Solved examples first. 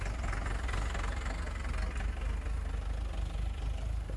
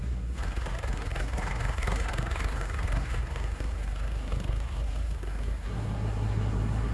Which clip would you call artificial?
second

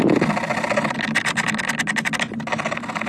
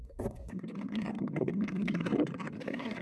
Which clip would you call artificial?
second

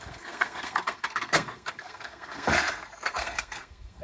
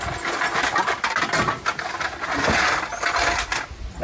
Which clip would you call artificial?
first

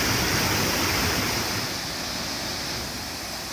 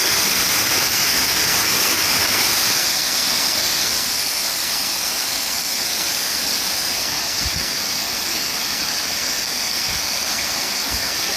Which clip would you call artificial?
second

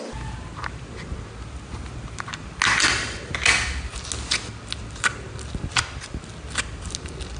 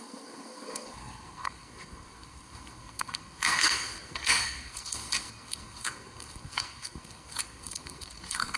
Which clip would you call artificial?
second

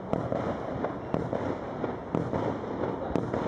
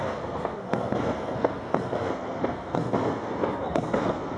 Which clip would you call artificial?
second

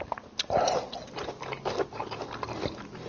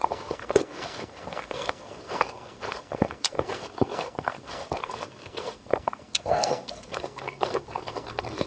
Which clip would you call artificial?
second